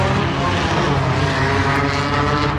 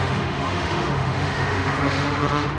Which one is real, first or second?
first